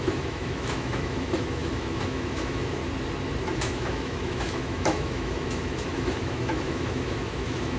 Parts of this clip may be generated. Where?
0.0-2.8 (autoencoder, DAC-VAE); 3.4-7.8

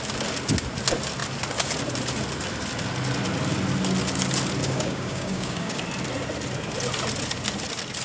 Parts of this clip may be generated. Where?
4.6-5.8 (codec, DAC)

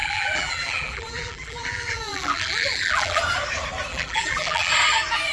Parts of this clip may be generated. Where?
0.0-3.2 (vocoder, BigVGAN v2); 3.9-4.7

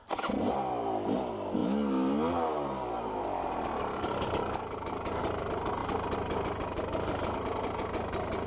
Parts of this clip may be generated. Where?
none

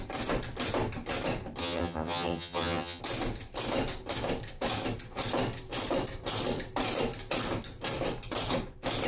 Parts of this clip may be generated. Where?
1.6-3.0 (vocoder, HiFi-GAN)

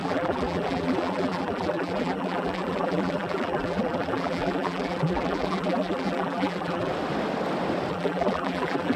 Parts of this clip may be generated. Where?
0.0-6.9 (vocoder, BigVGAN v2); 7.9-9.0

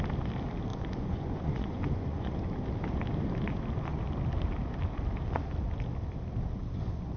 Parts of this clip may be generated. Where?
0.7-2.4 (vocoder, Vocos)

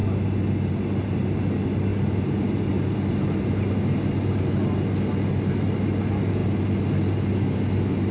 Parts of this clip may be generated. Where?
none